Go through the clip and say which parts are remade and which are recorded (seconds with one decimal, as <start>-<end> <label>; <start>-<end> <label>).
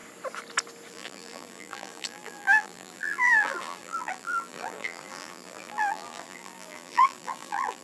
0.0-0.9 recorded; 0.9-7.8 remade